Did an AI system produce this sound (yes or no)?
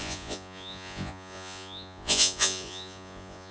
yes